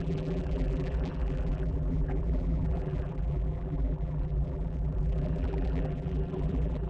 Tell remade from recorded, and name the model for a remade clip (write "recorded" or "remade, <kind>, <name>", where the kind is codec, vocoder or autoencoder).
remade, vocoder, BigVGAN v2